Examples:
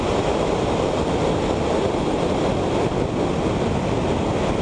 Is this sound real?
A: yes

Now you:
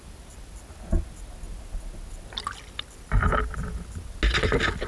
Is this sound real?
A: yes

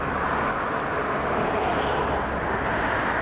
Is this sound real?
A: yes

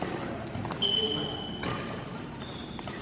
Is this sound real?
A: yes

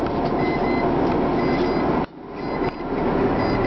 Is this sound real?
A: yes